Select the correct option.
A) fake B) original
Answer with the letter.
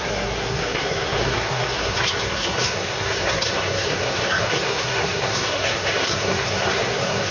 A